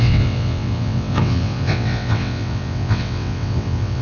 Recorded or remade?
remade